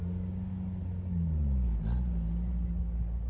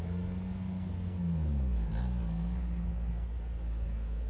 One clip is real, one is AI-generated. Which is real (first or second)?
first